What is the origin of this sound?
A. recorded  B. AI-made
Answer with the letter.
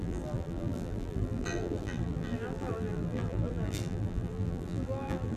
B